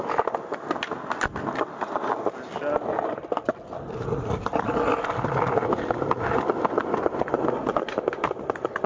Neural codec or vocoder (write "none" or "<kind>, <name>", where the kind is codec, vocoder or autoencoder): none